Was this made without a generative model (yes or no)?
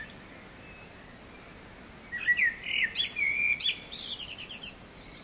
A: yes